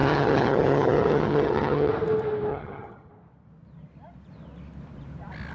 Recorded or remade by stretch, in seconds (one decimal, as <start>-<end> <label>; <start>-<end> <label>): 0.0-1.9 remade; 1.9-2.5 recorded; 2.5-3.1 remade; 3.1-5.5 recorded